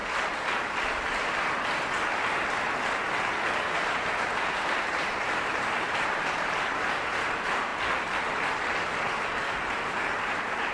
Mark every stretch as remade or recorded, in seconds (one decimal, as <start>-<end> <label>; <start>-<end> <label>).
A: 0.0-3.7 recorded; 3.7-7.7 remade; 7.7-9.5 recorded; 9.5-10.7 remade